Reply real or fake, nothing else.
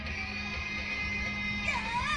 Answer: real